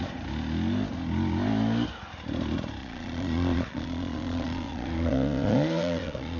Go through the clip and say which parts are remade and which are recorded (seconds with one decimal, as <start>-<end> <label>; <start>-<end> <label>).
0.0-2.8 recorded; 2.8-6.4 remade